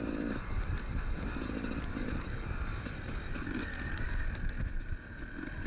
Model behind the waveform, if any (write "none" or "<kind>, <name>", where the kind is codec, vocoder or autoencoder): none